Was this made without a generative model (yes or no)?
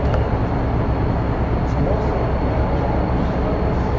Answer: yes